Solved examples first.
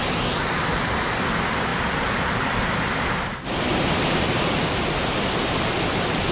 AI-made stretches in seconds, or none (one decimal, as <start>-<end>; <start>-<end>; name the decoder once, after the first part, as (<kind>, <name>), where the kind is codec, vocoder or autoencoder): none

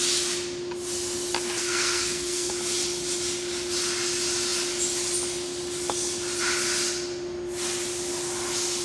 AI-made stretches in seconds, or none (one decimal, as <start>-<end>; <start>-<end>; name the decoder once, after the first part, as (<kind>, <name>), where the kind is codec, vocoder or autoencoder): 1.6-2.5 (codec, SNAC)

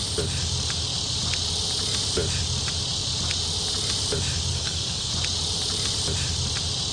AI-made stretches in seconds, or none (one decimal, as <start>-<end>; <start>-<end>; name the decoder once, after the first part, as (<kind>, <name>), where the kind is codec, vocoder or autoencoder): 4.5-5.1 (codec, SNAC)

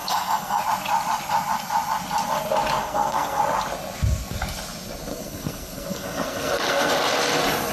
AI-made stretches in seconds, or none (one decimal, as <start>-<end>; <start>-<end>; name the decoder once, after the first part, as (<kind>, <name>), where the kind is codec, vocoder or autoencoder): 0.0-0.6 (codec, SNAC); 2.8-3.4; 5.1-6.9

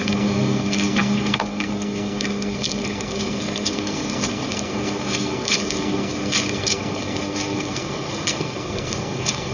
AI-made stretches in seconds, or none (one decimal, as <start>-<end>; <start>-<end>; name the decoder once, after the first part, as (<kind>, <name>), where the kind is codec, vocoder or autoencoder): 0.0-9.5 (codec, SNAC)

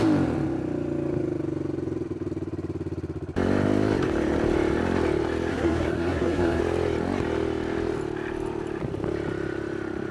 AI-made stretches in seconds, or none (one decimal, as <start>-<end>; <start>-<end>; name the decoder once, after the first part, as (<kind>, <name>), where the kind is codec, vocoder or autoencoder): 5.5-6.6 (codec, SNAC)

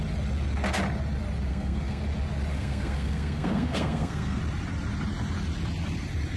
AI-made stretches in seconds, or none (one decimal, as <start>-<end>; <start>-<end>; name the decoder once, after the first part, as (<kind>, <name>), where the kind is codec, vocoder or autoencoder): 1.5-2.0 (codec, SNAC); 2.5-4.4